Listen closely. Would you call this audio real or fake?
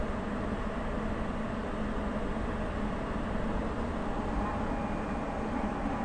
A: real